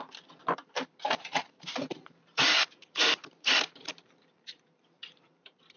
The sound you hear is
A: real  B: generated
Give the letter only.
B